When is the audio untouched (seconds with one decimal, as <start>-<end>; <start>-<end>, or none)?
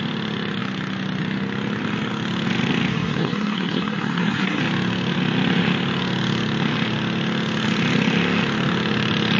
0.0-2.9; 4.6-9.4